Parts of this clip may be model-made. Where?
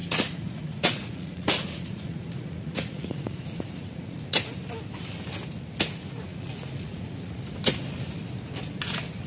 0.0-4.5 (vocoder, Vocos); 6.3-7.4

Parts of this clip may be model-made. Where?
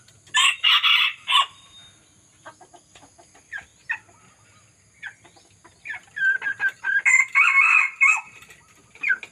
none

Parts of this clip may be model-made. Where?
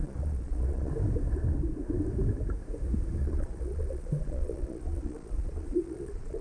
0.0-0.9 (vocoder, Vocos); 3.2-6.4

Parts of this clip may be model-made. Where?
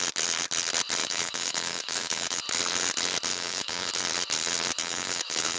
1.0-2.4 (autoencoder, DAC-VAE); 3.3-3.9; 4.8-5.6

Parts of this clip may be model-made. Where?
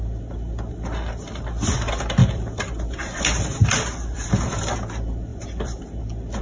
2.2-3.2 (vocoder, BigVGAN v2); 3.6-4.7; 5.3-5.8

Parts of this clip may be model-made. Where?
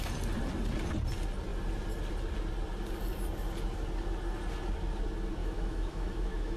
5.4-6.6 (autoencoder, DAC-VAE)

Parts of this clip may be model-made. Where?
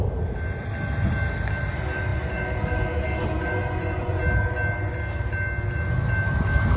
3.6-4.2 (vocoder, Vocos)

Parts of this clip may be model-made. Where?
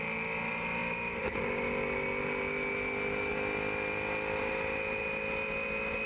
none